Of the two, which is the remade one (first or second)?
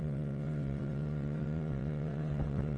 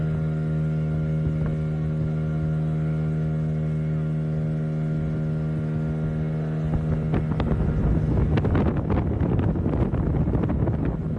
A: first